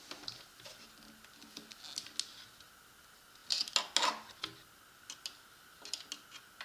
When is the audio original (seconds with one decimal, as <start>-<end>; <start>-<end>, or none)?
0.0-6.6